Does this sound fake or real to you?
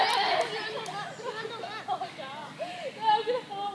real